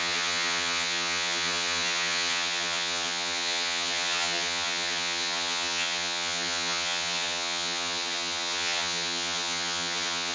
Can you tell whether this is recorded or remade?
remade